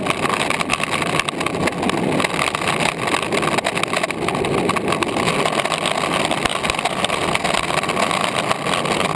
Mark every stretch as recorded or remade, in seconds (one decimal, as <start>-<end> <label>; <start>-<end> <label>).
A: 0.0-9.2 recorded